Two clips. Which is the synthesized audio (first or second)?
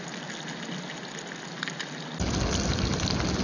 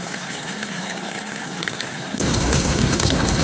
second